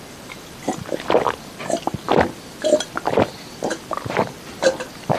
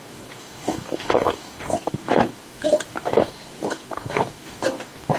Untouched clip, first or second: first